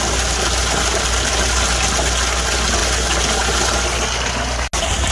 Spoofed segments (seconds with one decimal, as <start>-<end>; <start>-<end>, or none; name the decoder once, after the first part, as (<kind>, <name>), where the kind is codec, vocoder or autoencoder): none